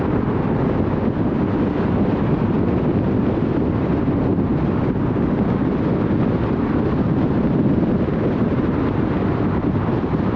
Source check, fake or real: fake